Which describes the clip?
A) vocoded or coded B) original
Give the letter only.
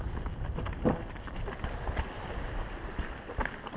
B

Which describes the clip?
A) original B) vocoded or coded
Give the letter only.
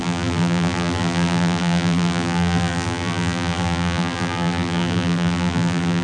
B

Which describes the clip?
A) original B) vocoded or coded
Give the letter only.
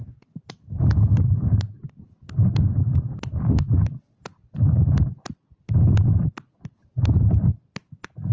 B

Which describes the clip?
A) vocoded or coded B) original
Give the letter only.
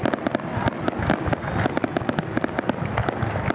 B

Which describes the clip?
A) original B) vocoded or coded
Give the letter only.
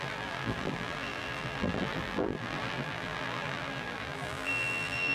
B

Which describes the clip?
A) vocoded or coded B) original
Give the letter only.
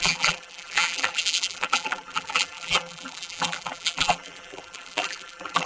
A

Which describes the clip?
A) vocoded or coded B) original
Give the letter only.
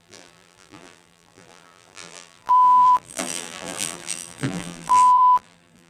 A